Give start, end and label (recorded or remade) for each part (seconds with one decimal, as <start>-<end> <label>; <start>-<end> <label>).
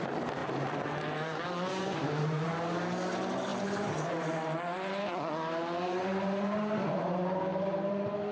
0.0-0.4 recorded; 0.4-2.5 remade; 2.5-3.5 recorded; 3.5-7.9 remade; 7.9-8.3 recorded